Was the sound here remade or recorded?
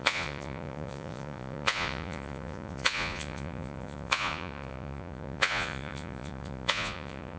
remade